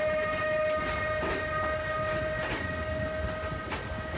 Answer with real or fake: real